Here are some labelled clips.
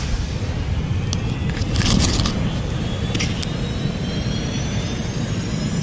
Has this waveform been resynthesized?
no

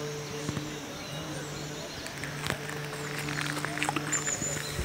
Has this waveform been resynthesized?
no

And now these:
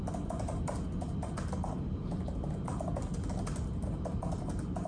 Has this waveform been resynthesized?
no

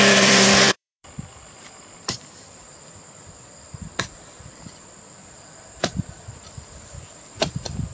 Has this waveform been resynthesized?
yes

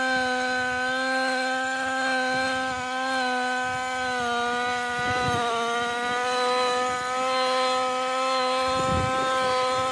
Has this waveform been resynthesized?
no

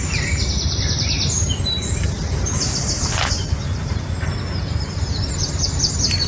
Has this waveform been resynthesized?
yes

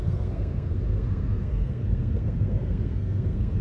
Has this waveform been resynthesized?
yes